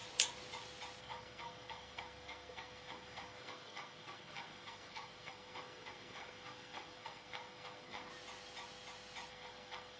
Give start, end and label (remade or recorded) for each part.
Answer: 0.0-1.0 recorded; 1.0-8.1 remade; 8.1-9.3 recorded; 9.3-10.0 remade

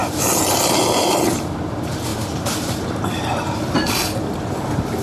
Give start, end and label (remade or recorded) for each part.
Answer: 0.0-5.0 recorded

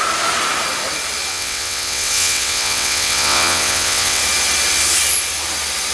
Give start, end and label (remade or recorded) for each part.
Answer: 0.0-1.3 recorded; 1.3-4.2 remade; 4.2-5.9 recorded

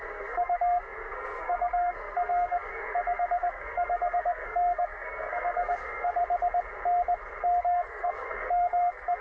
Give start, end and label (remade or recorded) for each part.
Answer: 0.0-6.2 remade; 6.2-7.6 recorded; 7.6-9.2 remade

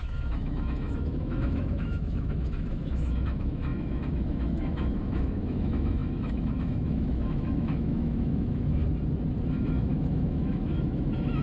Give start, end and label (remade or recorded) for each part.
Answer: 0.0-8.8 remade; 8.8-9.5 recorded; 9.5-11.4 remade